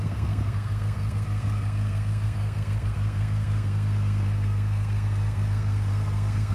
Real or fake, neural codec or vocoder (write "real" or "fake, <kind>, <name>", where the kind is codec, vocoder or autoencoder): fake, codec, SNAC